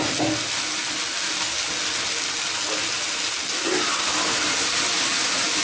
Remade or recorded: recorded